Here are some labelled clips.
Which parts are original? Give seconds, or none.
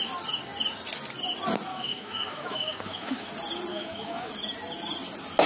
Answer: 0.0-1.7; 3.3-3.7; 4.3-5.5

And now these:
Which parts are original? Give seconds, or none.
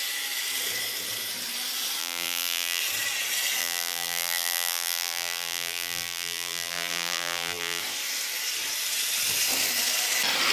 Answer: 0.0-2.0; 2.8-3.6; 7.8-10.5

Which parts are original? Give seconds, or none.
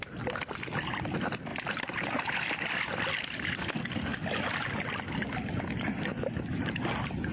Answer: 0.0-7.3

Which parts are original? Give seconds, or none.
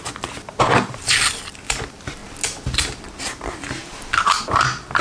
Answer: none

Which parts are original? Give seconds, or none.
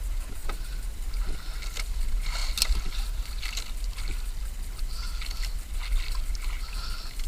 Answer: 0.0-7.3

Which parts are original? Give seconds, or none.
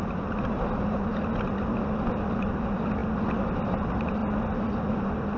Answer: 1.1-2.3; 3.0-3.5; 4.2-4.9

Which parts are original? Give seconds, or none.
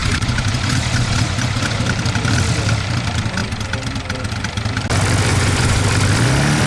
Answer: 1.8-5.3; 5.8-6.7